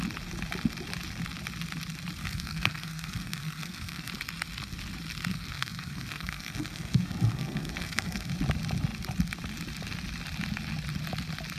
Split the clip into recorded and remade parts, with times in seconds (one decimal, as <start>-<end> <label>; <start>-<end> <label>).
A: 0.0-2.2 recorded; 2.2-4.1 remade; 4.1-5.3 recorded; 5.3-8.3 remade; 8.3-11.6 recorded